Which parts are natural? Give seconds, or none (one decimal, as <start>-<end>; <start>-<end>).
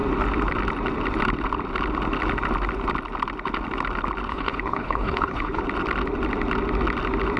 0.0-4.3; 5.6-7.4